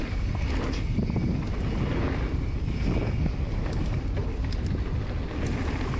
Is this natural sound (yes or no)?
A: yes